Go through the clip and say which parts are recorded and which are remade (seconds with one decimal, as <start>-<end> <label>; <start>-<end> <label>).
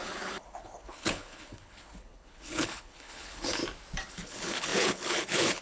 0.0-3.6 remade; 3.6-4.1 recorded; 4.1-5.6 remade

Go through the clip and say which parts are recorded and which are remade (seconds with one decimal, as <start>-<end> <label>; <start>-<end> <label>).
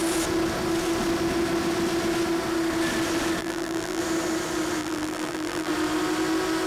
0.0-3.4 recorded; 3.4-4.0 remade; 4.0-4.8 recorded; 4.8-5.7 remade; 5.7-6.7 recorded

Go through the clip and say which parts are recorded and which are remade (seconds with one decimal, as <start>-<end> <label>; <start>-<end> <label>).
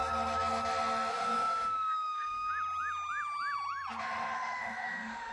0.0-1.1 recorded; 1.1-2.5 remade; 2.5-4.0 recorded; 4.0-5.3 remade